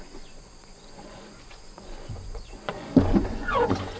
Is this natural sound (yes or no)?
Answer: no